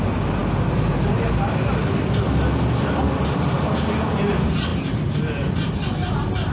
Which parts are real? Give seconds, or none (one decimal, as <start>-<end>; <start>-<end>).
0.0-6.5